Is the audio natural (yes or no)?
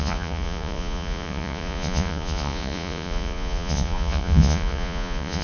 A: no